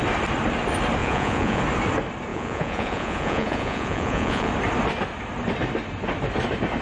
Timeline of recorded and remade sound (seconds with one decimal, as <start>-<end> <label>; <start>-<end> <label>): 0.0-1.0 recorded; 1.0-1.6 remade; 1.6-2.3 recorded; 2.3-4.5 remade; 4.5-6.8 recorded